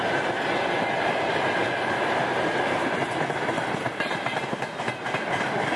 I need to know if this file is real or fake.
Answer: real